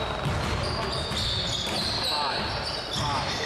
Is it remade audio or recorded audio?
recorded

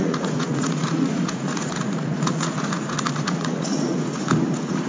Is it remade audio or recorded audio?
remade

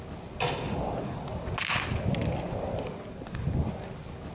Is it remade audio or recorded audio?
recorded